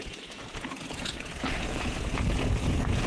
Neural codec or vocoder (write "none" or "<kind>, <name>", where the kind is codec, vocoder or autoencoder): vocoder, Vocos